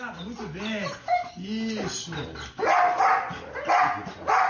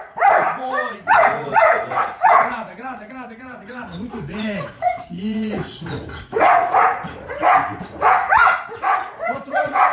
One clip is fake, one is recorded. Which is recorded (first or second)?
first